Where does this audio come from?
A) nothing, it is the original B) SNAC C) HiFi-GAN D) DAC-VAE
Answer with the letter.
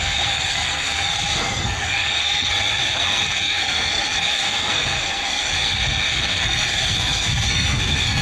B